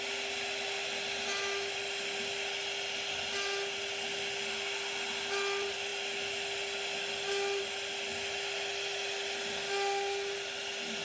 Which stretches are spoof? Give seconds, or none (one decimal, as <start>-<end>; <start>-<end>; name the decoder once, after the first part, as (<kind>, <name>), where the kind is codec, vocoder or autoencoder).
none